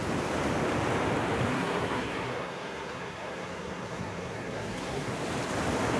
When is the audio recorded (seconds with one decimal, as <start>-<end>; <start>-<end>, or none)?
0.0-1.5; 5.1-6.0

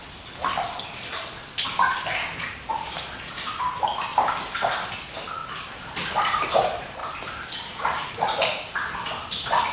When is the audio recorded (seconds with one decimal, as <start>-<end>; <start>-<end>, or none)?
0.0-4.1; 4.7-7.0; 8.1-9.7

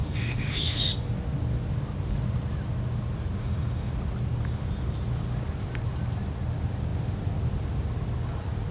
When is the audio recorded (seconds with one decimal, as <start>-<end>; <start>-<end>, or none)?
0.9-3.4; 3.9-8.7

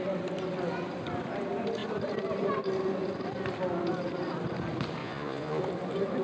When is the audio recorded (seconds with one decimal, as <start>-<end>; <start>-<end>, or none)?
0.0-5.0; 5.6-6.2

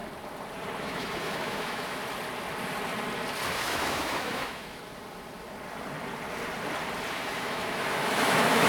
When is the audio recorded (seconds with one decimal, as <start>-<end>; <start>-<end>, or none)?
0.0-0.8; 2.0-3.5; 4.8-7.1

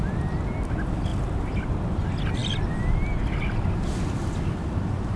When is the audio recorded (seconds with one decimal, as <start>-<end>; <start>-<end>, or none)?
0.0-5.2

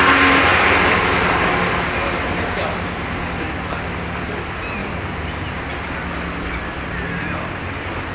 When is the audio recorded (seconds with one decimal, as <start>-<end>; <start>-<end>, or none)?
0.0-8.1